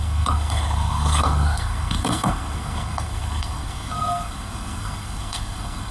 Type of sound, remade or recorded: remade